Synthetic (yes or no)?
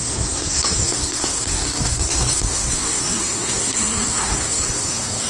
yes